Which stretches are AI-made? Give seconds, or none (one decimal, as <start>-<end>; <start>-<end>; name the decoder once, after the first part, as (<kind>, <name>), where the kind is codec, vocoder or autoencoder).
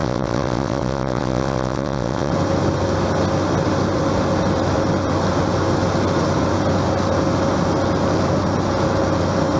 0.0-2.3 (vocoder, WaveNeXt)